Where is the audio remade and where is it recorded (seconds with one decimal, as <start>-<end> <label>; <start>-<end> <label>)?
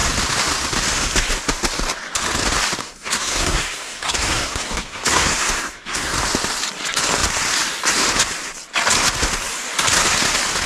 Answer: 0.0-2.8 recorded; 2.8-6.1 remade; 6.1-10.7 recorded